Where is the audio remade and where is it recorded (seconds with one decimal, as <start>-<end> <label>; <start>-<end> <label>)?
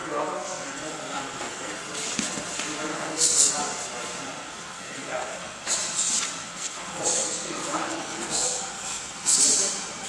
0.0-1.7 remade; 1.7-2.9 recorded; 2.9-3.5 remade; 3.5-4.4 recorded; 4.4-5.6 remade; 5.6-6.4 recorded; 6.4-9.4 remade; 9.4-10.1 recorded